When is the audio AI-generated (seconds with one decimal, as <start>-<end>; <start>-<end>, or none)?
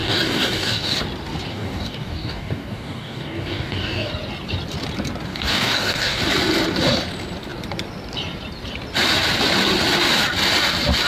0.0-1.0; 1.5-4.1; 5.3-6.2